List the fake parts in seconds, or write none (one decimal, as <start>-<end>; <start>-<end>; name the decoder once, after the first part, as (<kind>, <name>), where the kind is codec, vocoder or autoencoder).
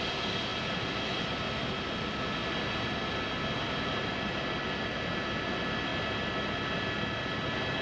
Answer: none